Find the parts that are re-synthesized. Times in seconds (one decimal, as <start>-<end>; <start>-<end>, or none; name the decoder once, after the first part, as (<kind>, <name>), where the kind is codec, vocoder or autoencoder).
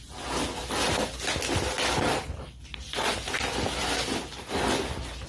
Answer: none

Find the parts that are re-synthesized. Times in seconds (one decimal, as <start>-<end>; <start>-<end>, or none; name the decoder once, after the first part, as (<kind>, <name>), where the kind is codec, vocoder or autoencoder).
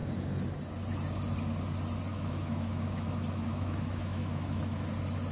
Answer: 2.1-4.6 (autoencoder, DAC-VAE)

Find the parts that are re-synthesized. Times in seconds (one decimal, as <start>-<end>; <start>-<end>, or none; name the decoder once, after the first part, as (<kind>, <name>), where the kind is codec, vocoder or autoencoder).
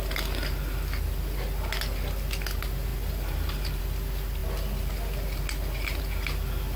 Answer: 2.9-3.8 (vocoder, BigVGAN v2)